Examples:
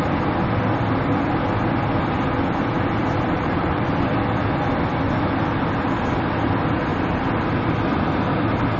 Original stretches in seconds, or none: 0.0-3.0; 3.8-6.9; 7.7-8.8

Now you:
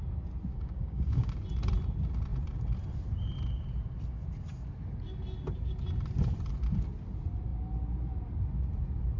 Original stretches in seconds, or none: 0.0-0.5; 1.3-9.2